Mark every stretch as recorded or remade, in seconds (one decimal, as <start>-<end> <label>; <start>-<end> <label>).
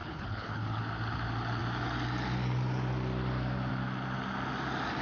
0.0-0.8 remade; 0.8-5.0 recorded